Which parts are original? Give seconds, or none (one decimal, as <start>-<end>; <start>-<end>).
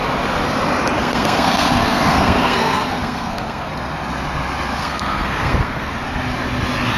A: 0.0-1.0; 3.7-4.8; 5.9-7.0